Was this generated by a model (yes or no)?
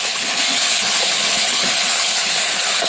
yes